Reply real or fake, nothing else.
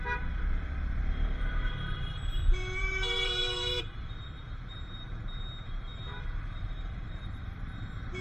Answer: fake